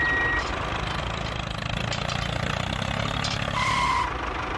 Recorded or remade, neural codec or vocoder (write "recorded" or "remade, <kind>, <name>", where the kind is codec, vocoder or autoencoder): recorded